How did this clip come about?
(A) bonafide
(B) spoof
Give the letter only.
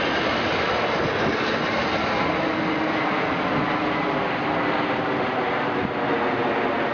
A